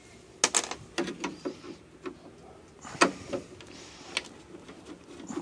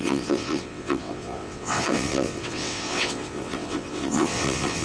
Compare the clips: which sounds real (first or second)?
first